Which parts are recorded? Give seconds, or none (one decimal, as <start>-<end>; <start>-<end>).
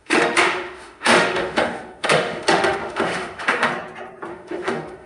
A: 3.7-4.3